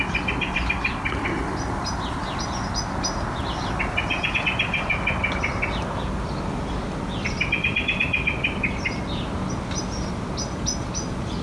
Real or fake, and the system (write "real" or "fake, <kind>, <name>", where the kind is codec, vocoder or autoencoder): real